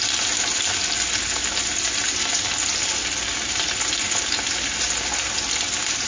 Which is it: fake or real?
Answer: real